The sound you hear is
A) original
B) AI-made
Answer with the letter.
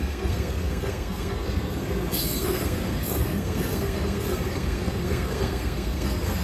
B